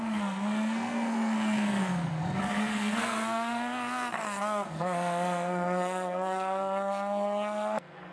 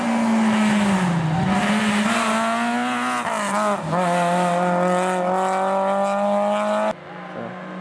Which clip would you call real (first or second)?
second